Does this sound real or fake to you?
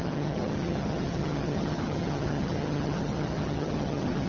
fake